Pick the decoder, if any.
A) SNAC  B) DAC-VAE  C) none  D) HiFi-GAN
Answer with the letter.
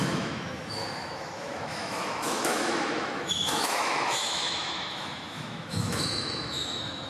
B